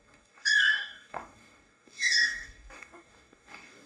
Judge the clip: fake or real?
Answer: fake